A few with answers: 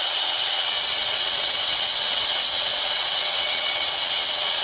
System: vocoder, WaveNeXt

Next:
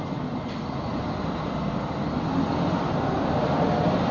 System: none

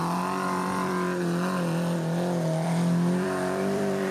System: vocoder, BigVGAN v2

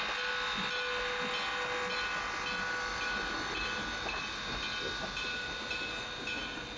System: none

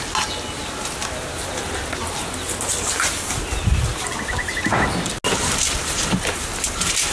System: none